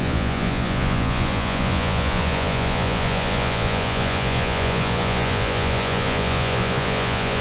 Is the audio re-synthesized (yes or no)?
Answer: yes